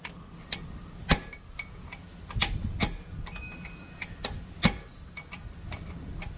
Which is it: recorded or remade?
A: recorded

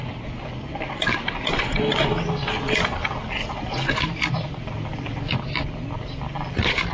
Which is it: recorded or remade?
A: recorded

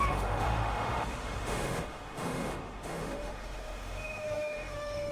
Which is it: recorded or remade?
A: remade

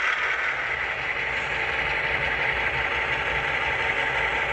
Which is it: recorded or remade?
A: recorded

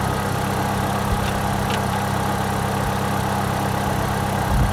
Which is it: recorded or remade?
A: recorded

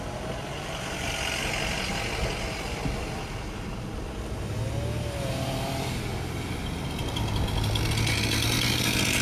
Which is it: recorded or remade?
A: recorded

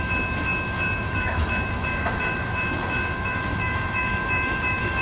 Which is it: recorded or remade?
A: remade